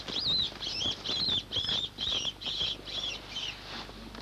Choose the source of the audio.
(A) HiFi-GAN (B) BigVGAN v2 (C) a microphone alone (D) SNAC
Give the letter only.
C